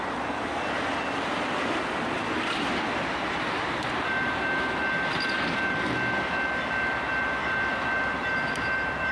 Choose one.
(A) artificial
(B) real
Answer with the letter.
B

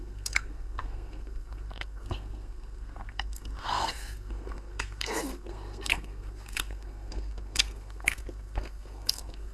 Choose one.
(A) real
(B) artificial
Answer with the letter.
B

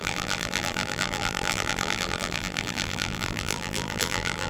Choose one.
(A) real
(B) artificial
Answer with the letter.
B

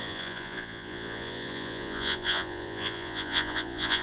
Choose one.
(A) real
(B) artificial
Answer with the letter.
B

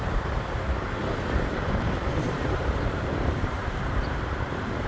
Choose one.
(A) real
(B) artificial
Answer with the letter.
B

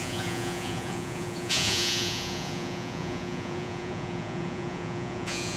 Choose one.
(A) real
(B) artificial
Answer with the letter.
B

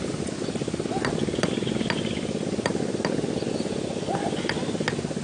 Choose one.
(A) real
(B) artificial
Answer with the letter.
A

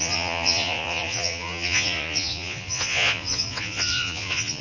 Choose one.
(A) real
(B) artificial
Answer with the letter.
B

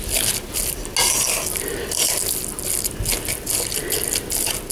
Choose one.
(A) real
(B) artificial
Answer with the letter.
A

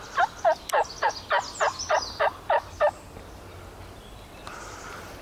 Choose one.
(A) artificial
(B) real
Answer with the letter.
B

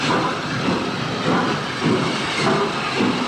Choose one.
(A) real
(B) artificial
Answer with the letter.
A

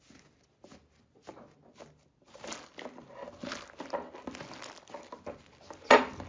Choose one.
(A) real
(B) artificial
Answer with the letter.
A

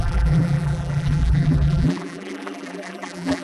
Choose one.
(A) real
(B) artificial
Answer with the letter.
B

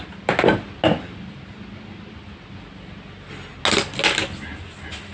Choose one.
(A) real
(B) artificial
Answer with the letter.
A